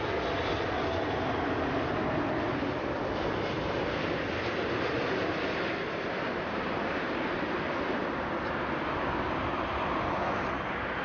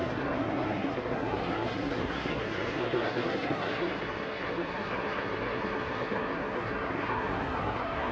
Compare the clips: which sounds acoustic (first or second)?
first